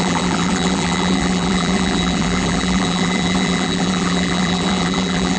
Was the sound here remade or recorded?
remade